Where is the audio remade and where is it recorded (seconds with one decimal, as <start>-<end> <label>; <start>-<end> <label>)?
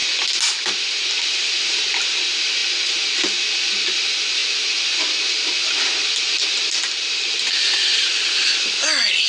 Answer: 0.0-9.3 recorded